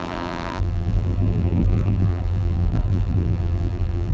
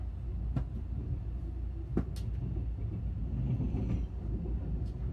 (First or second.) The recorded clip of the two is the second